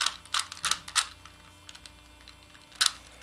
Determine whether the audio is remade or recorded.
recorded